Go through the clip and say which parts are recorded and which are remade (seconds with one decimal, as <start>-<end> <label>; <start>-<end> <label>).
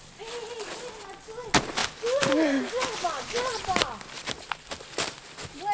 0.0-5.7 recorded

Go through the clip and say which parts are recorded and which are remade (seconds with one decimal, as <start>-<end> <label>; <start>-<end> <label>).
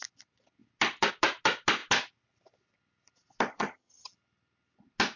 0.0-3.5 recorded; 3.5-4.1 remade; 4.1-5.2 recorded